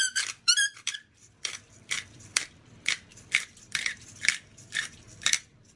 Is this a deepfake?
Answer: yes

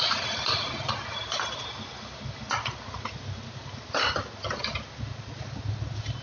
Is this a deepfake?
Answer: no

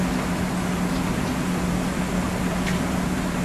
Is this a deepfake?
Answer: no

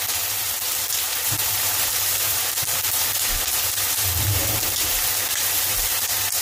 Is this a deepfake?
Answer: yes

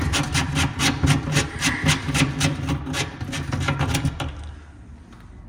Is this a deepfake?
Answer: no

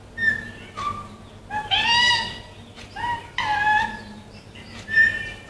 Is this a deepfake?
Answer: no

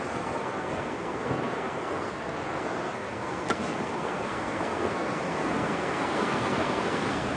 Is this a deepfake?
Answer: yes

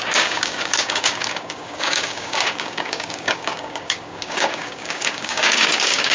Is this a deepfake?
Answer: yes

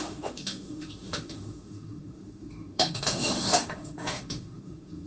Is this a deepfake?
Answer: yes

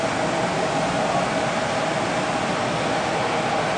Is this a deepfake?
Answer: no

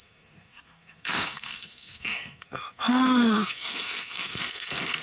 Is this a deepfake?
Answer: yes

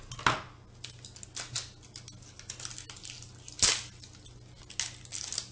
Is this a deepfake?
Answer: no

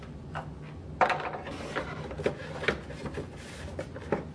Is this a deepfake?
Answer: no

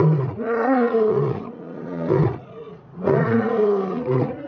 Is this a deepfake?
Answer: yes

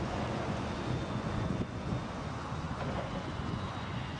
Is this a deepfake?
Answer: yes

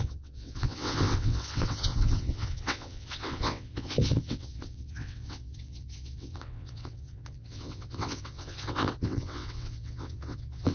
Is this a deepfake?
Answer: yes